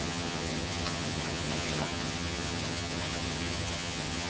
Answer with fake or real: fake